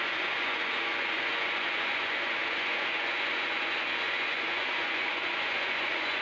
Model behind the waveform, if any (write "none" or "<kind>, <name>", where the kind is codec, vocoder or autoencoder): vocoder, Vocos